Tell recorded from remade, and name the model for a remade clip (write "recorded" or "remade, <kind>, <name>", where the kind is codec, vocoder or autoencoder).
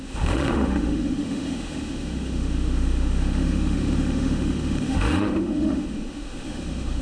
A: remade, autoencoder, DAC-VAE